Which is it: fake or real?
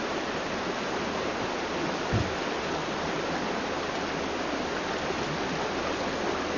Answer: real